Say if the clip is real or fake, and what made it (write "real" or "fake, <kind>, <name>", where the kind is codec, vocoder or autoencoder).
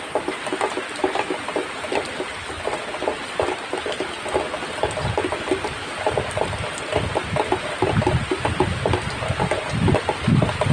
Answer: real